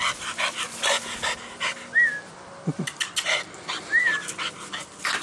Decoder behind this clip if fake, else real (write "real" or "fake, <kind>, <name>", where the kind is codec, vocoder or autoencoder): real